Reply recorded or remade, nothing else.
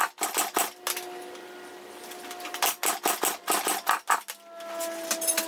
recorded